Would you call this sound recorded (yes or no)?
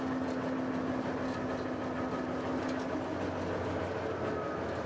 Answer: yes